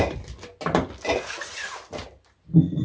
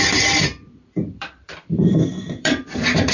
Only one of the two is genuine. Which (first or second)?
first